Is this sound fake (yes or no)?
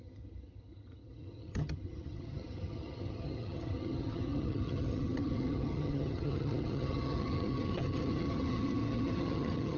yes